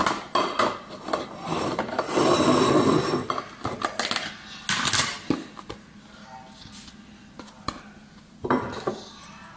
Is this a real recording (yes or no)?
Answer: yes